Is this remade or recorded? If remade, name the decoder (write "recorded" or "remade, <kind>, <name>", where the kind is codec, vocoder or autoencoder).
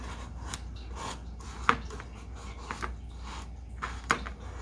recorded